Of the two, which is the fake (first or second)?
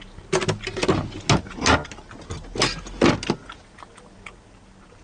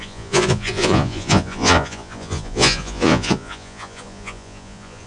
second